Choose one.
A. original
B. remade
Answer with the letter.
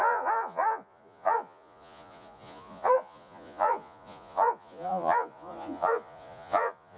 B